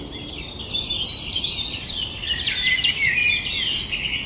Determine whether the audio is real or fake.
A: real